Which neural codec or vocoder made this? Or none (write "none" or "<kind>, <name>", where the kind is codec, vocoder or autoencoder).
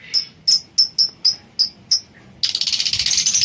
none